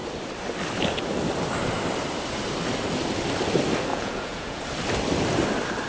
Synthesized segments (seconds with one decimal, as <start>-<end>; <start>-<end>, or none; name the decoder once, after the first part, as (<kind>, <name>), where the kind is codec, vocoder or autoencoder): 3.9-4.6 (vocoder, Vocos)